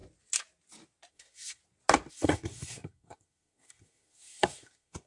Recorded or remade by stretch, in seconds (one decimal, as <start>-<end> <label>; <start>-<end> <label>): 0.0-1.1 recorded; 1.1-1.6 remade; 1.6-2.1 recorded; 2.1-5.1 remade